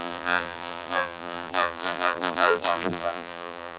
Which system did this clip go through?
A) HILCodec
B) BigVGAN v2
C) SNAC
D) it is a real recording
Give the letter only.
B